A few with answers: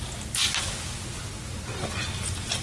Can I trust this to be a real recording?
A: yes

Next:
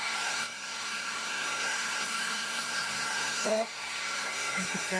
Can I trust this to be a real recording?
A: no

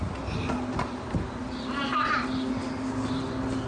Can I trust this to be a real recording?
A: yes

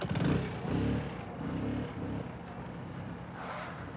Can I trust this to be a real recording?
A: yes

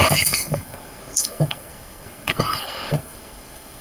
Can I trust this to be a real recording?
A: no